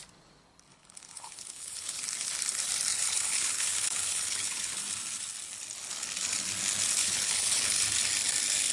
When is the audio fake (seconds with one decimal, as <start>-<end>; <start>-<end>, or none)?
0.7-2.0; 2.9-4.8; 7.0-7.8